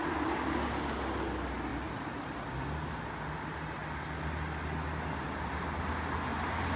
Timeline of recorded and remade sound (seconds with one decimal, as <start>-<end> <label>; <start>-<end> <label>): 0.0-6.8 recorded